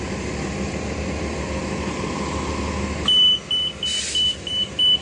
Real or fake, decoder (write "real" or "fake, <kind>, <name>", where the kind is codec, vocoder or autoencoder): real